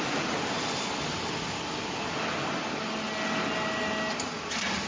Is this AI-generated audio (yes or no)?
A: no